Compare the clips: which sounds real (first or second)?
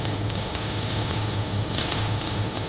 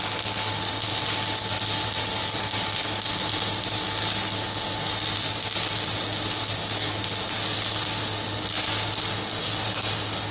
second